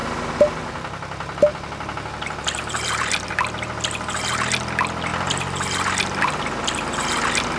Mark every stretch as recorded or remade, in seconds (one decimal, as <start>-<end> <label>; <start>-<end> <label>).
0.0-5.1 recorded; 5.1-6.2 remade; 6.2-7.6 recorded